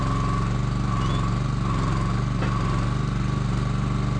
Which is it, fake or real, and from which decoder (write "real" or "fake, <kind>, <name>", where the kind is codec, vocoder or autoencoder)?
real